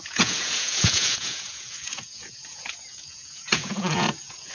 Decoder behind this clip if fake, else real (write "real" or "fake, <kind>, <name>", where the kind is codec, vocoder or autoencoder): fake, vocoder, Vocos